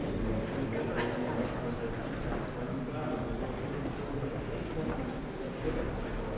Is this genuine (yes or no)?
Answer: yes